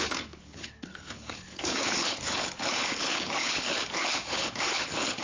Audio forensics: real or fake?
fake